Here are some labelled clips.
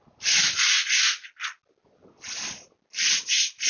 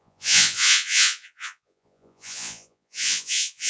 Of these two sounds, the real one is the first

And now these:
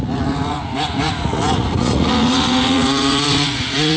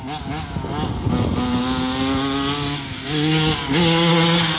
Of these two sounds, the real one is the second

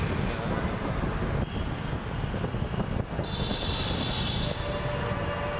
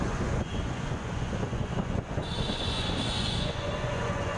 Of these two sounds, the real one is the first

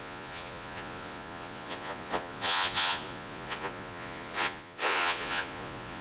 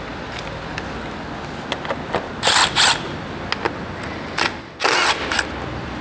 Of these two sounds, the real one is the second